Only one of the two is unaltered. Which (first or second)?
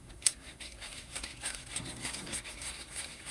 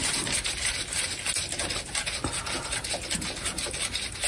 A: second